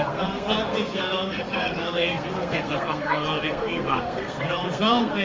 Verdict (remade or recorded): remade